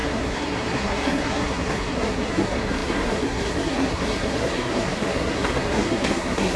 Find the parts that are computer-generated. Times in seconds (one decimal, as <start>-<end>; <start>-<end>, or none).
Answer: 0.0-6.6